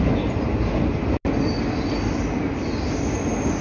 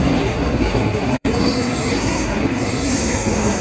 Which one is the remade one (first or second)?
second